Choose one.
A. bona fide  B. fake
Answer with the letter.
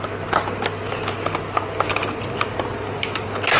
A